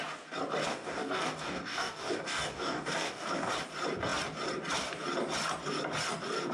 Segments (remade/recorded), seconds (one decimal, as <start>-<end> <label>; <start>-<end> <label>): 0.0-0.7 recorded; 0.7-3.5 remade; 3.5-6.5 recorded